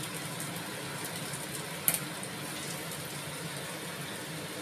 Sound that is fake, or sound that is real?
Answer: real